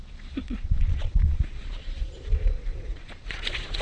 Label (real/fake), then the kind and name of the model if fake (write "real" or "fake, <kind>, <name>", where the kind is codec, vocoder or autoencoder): fake, vocoder, Vocos